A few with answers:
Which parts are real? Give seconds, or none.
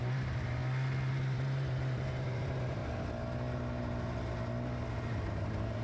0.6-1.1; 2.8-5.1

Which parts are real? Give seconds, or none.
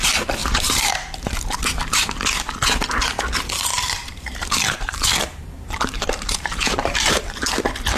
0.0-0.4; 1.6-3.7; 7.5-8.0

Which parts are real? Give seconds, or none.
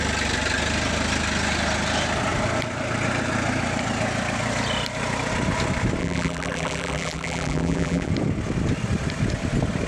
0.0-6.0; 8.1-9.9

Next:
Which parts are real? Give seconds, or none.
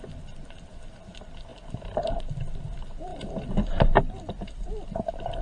0.0-1.5; 2.0-3.1; 4.2-5.4